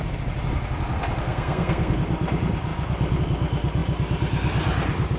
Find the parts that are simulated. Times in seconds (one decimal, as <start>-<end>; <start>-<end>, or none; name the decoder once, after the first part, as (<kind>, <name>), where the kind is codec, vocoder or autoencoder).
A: 1.3-2.0 (codec, SNAC)